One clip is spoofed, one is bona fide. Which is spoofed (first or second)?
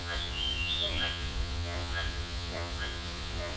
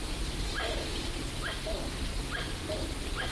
first